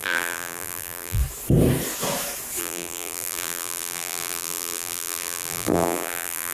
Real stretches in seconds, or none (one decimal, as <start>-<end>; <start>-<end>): 1.2-2.6